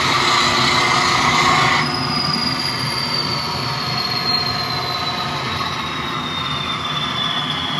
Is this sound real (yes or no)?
yes